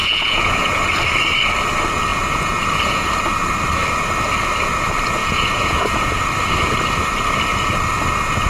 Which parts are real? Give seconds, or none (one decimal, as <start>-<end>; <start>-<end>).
0.9-2.1; 3.1-5.2; 6.2-8.5